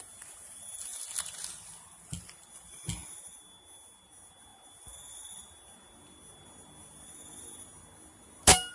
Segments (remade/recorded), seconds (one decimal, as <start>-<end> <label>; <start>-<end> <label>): 0.0-8.7 recorded